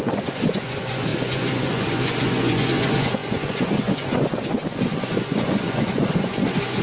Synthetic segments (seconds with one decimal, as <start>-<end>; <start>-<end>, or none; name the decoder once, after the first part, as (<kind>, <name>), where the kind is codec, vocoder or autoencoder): 0.0-6.8 (vocoder, Vocos)